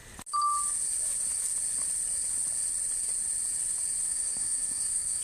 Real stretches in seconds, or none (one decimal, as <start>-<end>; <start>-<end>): 0.0-4.1